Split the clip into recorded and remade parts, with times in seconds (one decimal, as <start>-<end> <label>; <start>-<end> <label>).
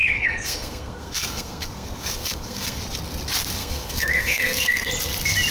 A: 0.0-2.8 remade; 2.8-3.6 recorded; 3.6-4.9 remade; 4.9-5.5 recorded